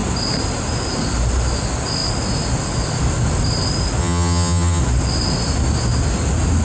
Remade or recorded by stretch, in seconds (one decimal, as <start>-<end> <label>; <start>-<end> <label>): 0.0-4.0 recorded; 4.0-4.8 remade; 4.8-6.6 recorded